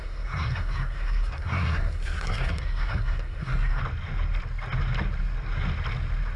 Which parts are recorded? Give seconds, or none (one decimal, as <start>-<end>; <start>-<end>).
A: 3.8-6.4